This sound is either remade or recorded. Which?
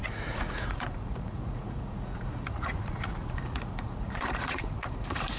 remade